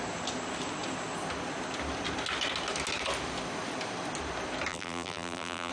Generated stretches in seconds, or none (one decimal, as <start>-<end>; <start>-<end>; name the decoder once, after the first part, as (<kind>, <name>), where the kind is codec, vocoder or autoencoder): 4.7-5.7 (vocoder, BigVGAN v2)

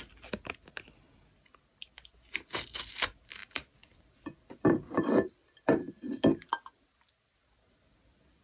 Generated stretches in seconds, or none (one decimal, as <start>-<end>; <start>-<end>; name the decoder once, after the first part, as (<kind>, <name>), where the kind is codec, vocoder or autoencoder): 3.4-5.9 (vocoder, BigVGAN v2)

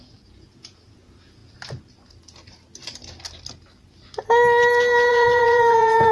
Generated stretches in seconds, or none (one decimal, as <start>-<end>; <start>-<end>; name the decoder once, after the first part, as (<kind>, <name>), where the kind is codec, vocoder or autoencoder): 0.0-1.4 (vocoder, Vocos); 5.1-6.1

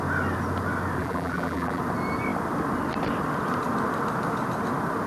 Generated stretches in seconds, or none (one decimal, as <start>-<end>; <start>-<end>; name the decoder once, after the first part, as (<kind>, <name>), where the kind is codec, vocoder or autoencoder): 1.0-1.8 (vocoder, BigVGAN v2)

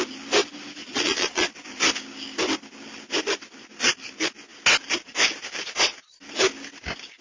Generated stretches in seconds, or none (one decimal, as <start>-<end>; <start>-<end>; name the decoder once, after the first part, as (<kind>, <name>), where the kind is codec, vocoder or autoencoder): 0.8-1.5 (vocoder, Vocos)

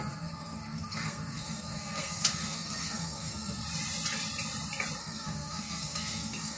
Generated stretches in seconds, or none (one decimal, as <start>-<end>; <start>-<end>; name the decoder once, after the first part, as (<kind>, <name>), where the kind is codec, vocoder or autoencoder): 0.0-3.6 (codec, SNAC); 5.0-6.6

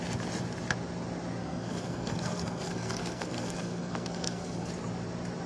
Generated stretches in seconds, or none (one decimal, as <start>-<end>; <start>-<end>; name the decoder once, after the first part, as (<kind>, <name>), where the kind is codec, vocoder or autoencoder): 1.4-4.7 (codec, SNAC)